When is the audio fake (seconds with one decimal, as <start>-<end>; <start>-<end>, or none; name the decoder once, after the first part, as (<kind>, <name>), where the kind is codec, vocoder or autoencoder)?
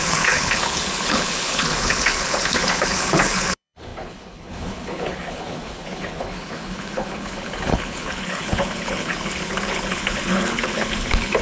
0.0-11.4 (codec, HILCodec)